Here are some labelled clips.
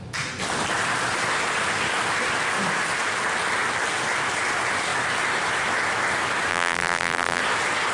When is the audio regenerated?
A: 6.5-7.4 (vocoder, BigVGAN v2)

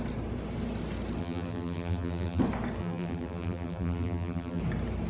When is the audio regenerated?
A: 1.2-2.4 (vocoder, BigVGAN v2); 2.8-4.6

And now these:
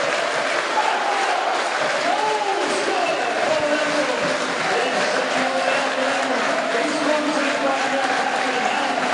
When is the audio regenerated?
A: none

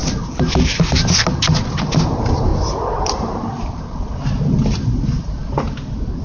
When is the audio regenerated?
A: 2.1-2.5 (vocoder, BigVGAN v2); 3.0-4.1